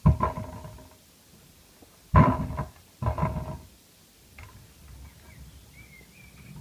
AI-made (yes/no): no